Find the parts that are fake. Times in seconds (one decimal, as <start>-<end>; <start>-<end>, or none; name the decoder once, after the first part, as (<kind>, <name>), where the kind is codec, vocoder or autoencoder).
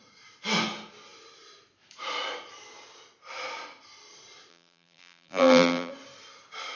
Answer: 4.5-5.9 (vocoder, BigVGAN v2)